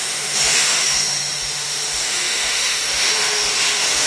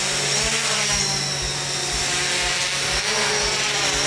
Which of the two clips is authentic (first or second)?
second